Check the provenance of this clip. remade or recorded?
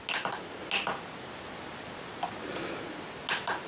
recorded